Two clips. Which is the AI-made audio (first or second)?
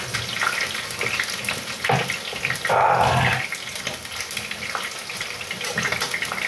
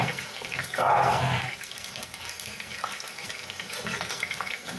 second